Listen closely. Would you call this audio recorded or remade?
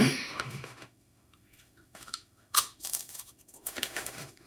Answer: remade